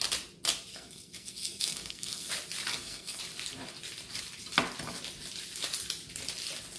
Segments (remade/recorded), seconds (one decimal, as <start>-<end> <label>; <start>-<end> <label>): 0.0-0.7 recorded; 0.7-2.3 remade; 2.3-2.7 recorded; 2.7-3.2 remade; 3.2-6.8 recorded